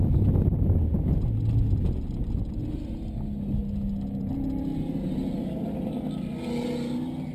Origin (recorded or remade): recorded